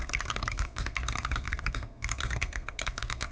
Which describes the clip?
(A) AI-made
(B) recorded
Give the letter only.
A